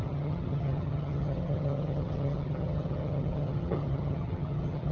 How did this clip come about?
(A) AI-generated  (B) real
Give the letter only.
A